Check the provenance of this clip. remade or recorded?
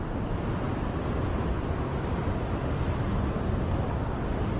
remade